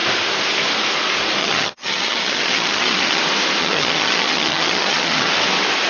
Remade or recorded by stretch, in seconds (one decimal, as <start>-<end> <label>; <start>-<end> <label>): 0.0-1.4 recorded; 1.4-3.2 remade; 3.2-3.6 recorded; 3.6-5.3 remade; 5.3-5.9 recorded